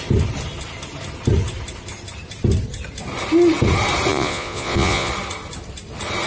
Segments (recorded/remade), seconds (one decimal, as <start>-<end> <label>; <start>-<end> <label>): 0.0-4.1 recorded; 4.1-5.1 remade; 5.1-6.3 recorded